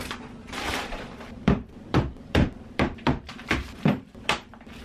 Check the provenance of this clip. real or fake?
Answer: fake